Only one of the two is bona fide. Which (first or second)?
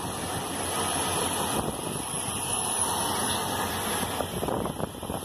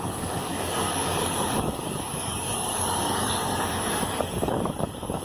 first